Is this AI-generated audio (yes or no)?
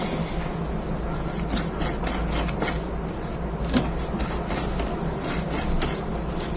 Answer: no